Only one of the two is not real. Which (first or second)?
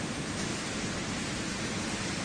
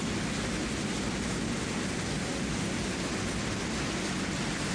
first